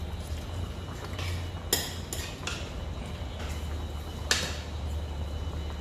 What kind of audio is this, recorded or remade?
recorded